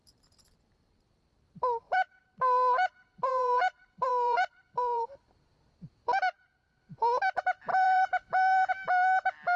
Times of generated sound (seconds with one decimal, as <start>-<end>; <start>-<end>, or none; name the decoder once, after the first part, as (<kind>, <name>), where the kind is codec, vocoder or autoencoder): 3.3-5.4 (vocoder, BigVGAN v2); 7.7-8.7